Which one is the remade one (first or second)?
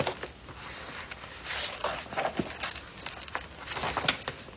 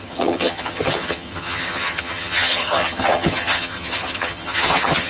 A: second